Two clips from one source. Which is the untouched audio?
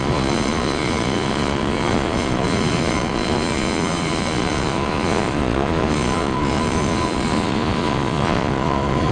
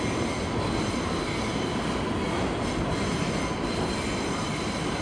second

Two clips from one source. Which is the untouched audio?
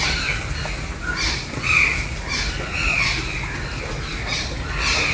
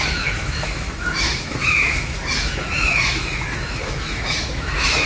first